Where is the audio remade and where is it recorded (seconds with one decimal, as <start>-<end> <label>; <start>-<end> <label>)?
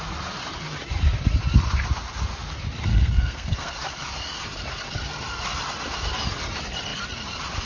0.0-2.9 recorded; 2.9-3.7 remade; 3.7-7.7 recorded